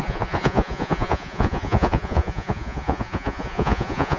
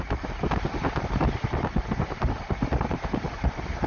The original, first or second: second